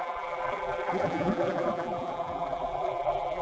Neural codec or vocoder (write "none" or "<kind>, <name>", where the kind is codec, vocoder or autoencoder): vocoder, BigVGAN v2